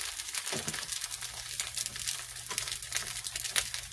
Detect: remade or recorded remade